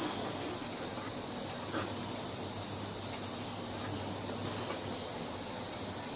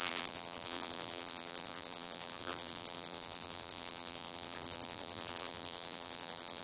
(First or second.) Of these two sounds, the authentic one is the first